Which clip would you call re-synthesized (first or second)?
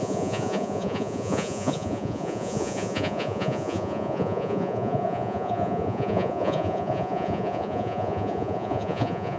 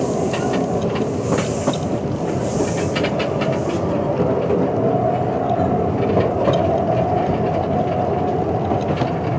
first